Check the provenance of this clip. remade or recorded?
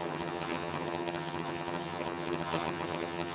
remade